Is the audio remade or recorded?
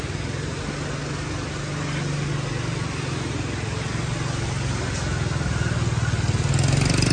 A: recorded